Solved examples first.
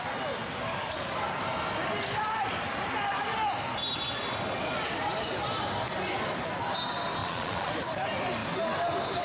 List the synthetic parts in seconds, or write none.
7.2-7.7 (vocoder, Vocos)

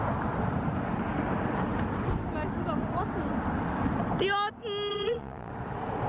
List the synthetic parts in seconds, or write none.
4.9-5.5 (vocoder, Vocos)

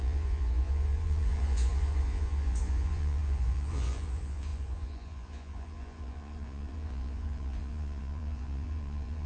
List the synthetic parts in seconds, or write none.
0.0-9.3 (vocoder, Vocos)

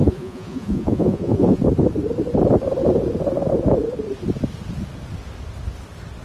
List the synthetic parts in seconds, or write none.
0.0-1.6 (vocoder, Vocos)

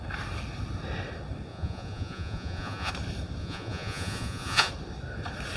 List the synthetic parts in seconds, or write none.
1.5-2.9 (vocoder, Vocos); 3.4-4.7

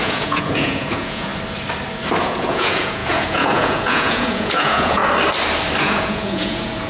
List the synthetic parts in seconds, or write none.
0.0-1.3 (vocoder, Vocos); 2.2-5.0; 5.8-6.9

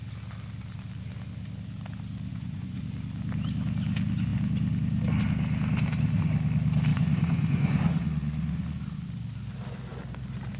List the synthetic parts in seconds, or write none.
2.3-2.8 (vocoder, Vocos); 6.9-8.8

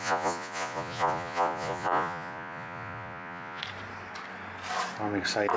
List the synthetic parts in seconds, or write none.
0.0-3.6 (vocoder, Vocos)